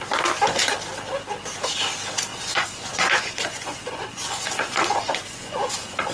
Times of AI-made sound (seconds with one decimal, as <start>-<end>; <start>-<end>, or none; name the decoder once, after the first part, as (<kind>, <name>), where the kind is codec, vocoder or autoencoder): 2.3-6.1 (vocoder, Vocos)